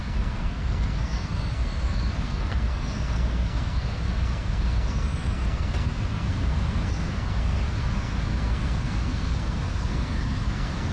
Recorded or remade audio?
remade